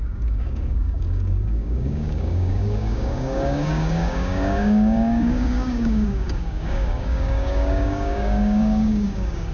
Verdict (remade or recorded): remade